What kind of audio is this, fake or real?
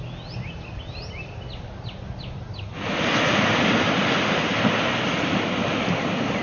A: real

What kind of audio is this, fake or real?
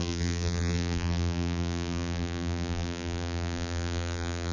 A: fake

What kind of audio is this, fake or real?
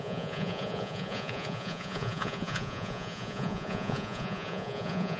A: fake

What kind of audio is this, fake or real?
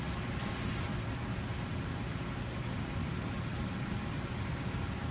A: real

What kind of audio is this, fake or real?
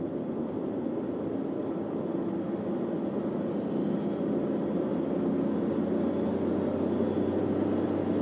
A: real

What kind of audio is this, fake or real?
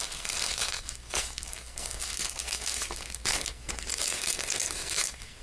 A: fake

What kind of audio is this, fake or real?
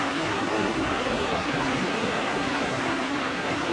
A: fake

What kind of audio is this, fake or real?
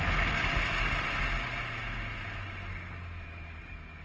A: real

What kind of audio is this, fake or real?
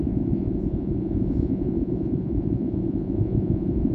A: fake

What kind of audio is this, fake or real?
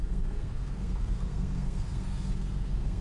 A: fake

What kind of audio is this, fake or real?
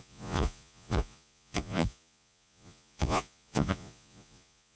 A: fake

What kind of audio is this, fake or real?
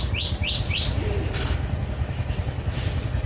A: real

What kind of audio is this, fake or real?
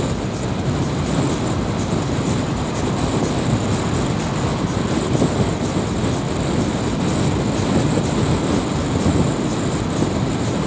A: real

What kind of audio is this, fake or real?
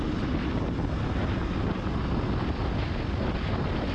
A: real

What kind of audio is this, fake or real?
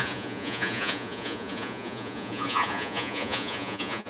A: fake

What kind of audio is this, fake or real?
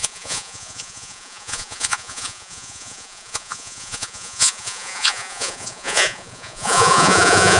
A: fake